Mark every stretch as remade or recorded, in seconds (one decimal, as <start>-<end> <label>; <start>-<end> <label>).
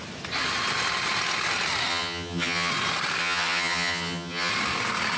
0.0-1.9 recorded; 1.9-2.7 remade; 2.7-3.2 recorded; 3.2-4.5 remade; 4.5-5.2 recorded